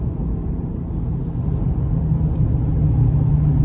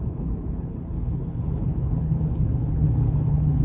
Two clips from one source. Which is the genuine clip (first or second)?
first